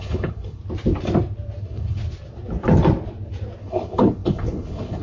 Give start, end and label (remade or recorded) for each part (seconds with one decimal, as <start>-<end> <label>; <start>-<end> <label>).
0.0-0.6 remade; 0.6-1.6 recorded; 1.6-2.0 remade; 2.0-3.6 recorded; 3.6-5.0 remade